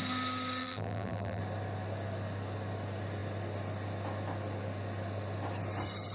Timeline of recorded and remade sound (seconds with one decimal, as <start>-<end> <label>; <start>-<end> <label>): 0.0-0.6 recorded; 0.6-1.4 remade; 1.4-6.1 recorded

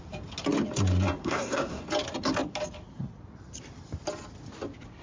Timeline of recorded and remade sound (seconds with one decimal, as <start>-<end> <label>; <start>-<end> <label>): 0.0-1.2 recorded; 1.2-1.8 remade; 1.8-5.0 recorded

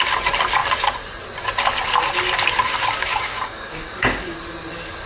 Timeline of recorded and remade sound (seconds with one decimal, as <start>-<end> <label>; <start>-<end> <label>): 0.0-3.0 recorded; 3.0-4.4 remade; 4.4-5.1 recorded